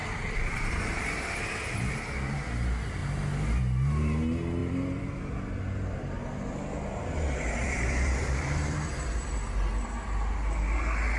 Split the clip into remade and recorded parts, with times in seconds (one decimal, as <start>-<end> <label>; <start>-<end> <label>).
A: 0.0-1.6 remade; 1.6-4.6 recorded; 4.6-5.2 remade; 5.2-7.6 recorded; 7.6-9.3 remade; 9.3-11.2 recorded